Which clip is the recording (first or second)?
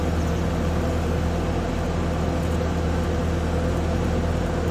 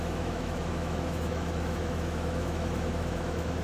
first